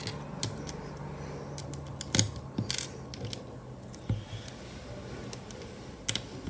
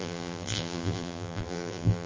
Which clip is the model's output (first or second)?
second